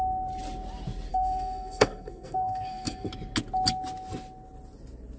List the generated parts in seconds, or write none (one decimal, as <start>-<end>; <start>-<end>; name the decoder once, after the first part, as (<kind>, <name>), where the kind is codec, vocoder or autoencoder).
1.1-3.1 (codec, SNAC)